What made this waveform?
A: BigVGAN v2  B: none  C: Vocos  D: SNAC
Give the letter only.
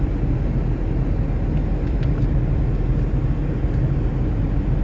B